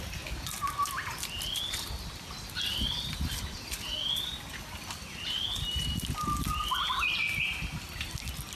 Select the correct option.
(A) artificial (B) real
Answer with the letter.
B